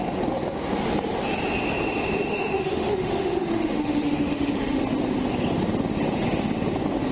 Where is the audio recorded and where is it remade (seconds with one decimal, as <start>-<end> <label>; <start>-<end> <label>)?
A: 0.0-2.3 recorded; 2.3-4.8 remade; 4.8-7.1 recorded